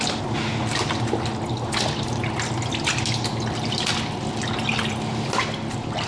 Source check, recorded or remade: recorded